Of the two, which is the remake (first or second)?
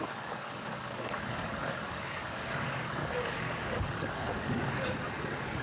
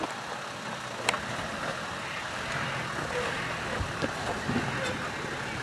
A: first